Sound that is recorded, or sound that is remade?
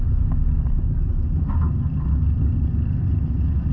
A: recorded